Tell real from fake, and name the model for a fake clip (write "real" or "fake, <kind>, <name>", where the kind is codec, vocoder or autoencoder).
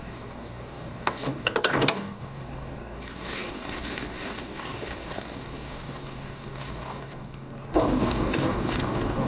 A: fake, codec, DAC